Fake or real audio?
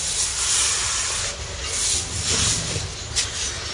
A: real